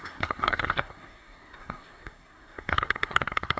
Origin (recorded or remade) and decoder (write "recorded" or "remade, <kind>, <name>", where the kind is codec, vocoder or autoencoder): remade, codec, SNAC